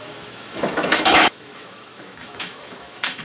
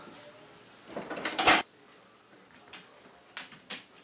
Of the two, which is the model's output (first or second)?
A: first